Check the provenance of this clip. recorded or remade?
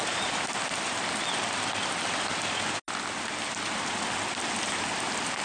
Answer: recorded